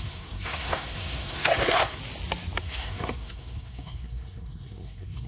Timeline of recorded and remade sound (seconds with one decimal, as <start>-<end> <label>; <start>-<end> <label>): 0.0-2.0 remade; 2.0-2.6 recorded; 2.6-5.3 remade